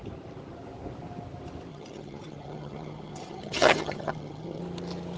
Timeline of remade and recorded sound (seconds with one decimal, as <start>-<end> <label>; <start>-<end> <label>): 0.0-1.7 recorded; 1.7-4.6 remade; 4.6-5.2 recorded